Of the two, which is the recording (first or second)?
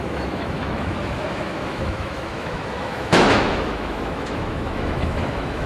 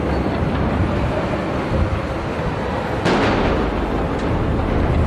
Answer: second